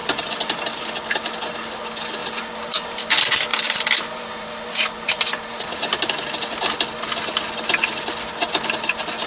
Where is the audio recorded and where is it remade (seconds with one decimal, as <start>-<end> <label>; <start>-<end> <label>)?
0.0-0.9 remade; 0.9-2.2 recorded; 2.2-3.0 remade; 3.0-3.5 recorded; 3.5-6.7 remade; 6.7-9.3 recorded